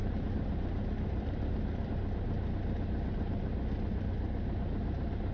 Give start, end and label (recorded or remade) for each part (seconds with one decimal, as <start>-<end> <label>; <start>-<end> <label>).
0.0-1.9 remade; 1.9-5.3 recorded